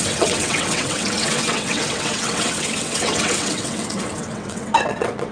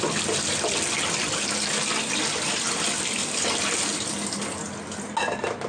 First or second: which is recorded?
second